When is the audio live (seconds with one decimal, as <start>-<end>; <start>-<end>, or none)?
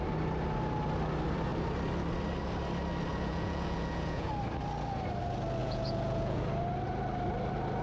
0.0-3.1; 4.3-5.6; 6.4-7.8